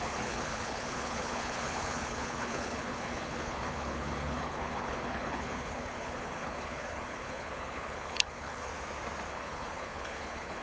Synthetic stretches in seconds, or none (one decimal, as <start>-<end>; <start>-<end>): 0.0-8.7; 9.3-10.6